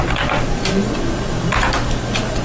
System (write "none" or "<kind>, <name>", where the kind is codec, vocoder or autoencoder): vocoder, BigVGAN v2